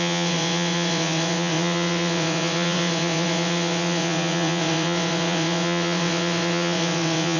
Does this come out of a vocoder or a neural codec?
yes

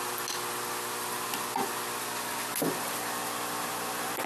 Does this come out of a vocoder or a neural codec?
no